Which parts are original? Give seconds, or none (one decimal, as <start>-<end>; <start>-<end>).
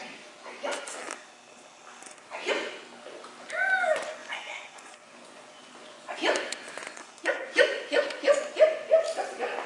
0.0-4.2; 8.5-9.7